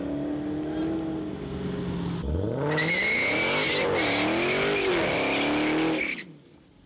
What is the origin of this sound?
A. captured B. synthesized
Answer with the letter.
A